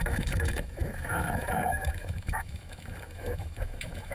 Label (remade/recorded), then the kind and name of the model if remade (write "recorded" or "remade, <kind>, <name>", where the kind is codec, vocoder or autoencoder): remade, autoencoder, DAC-VAE